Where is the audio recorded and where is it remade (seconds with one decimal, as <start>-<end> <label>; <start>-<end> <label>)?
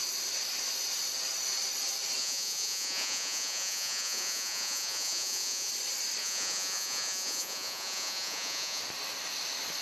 0.0-2.2 recorded; 2.2-5.7 remade; 5.7-6.2 recorded; 6.2-8.8 remade; 8.8-9.8 recorded